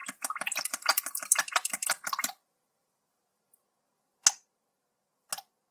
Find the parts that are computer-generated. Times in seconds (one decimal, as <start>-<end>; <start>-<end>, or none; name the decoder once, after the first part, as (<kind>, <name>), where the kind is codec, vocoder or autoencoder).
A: 0.0-3.4 (vocoder, BigVGAN v2)